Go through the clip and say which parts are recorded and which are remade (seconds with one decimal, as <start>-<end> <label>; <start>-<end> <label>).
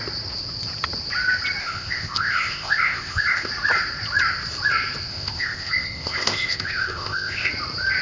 0.0-1.6 recorded; 1.6-3.5 remade; 3.5-5.1 recorded; 5.1-7.5 remade; 7.5-8.0 recorded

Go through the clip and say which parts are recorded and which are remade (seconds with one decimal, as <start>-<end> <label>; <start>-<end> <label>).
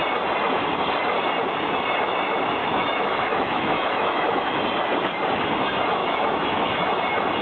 0.0-2.6 recorded; 2.6-4.6 remade; 4.6-6.0 recorded; 6.0-6.9 remade; 6.9-7.4 recorded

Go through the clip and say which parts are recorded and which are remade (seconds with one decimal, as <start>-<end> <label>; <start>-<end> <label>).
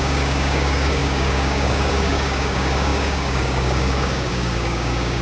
0.0-5.2 remade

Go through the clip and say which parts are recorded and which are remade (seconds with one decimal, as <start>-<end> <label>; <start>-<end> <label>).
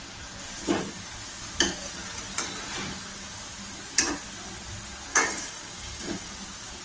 0.0-5.1 recorded; 5.1-6.3 remade; 6.3-6.8 recorded